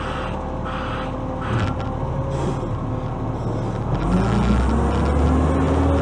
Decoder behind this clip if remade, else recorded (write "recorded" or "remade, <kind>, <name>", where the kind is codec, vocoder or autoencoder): recorded